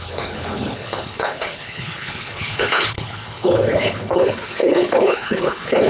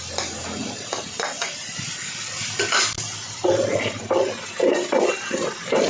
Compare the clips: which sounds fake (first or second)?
first